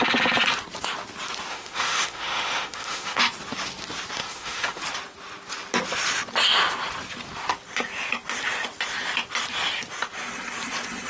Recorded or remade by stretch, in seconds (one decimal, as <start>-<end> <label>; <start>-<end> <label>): 0.0-1.5 recorded; 1.5-3.2 remade; 3.2-4.2 recorded; 4.2-4.8 remade; 4.8-11.1 recorded